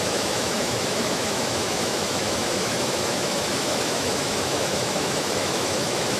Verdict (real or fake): fake